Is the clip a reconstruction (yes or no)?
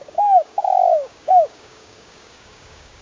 yes